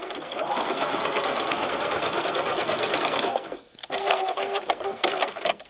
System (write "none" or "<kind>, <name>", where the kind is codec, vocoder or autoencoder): codec, SNAC